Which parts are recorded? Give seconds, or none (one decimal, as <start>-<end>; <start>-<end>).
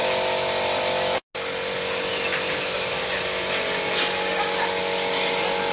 0.0-5.7